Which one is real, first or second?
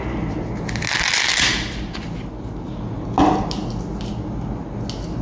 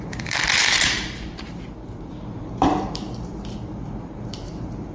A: first